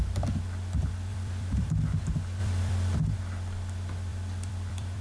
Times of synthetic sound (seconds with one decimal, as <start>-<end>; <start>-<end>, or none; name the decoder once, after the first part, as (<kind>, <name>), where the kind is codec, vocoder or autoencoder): 1.1-1.7 (vocoder, BigVGAN v2); 2.4-3.0; 4.1-5.0